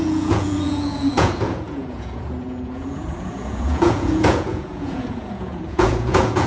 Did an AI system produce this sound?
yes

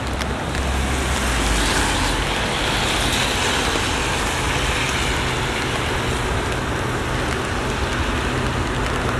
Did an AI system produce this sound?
no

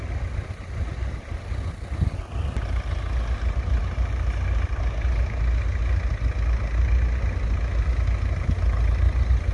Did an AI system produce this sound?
no